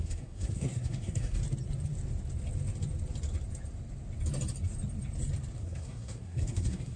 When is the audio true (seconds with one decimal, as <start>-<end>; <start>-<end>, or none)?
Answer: 1.4-5.6

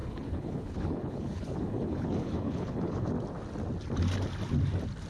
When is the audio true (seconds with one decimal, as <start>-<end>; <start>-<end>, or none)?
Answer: 3.1-5.1